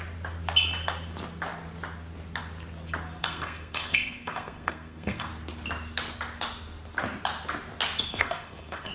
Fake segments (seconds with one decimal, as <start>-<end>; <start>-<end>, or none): 3.2-5.3; 8.1-8.9